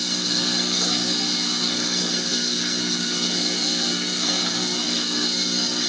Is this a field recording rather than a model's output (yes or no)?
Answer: no